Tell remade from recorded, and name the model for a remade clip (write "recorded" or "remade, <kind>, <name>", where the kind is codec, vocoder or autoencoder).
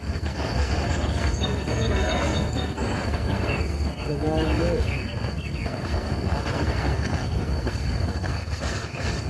remade, codec, SNAC